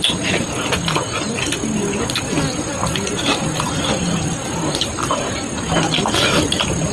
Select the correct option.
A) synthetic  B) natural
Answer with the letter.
B